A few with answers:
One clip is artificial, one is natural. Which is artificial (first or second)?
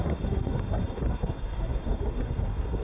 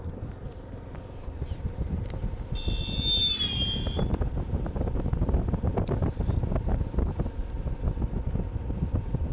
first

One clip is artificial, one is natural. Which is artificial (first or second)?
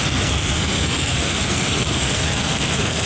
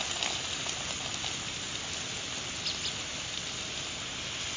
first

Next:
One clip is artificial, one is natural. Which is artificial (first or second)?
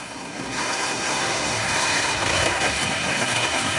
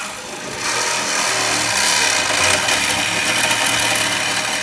first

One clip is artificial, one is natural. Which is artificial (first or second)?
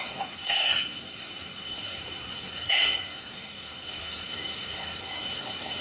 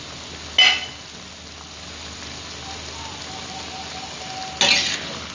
first